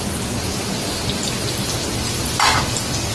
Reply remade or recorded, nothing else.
recorded